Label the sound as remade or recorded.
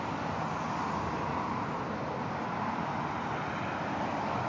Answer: recorded